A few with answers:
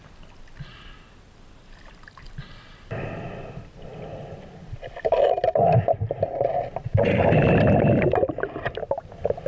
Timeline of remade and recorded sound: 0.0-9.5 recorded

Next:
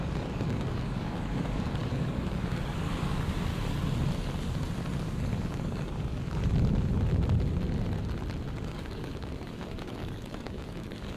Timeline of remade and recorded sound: 0.0-3.5 remade; 3.5-5.0 recorded; 5.0-6.4 remade; 6.4-8.6 recorded; 8.6-11.2 remade